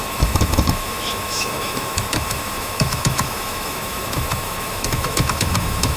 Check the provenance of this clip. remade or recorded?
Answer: remade